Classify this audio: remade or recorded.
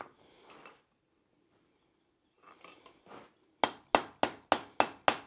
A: recorded